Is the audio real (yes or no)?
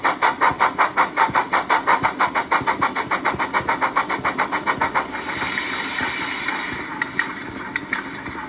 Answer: yes